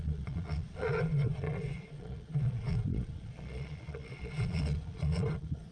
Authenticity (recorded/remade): remade